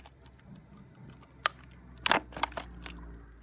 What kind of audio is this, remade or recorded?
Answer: recorded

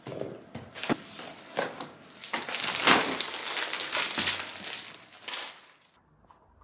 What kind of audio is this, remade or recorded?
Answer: recorded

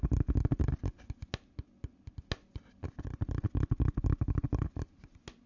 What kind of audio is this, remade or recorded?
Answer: recorded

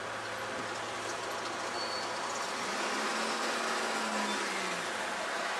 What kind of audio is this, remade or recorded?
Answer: recorded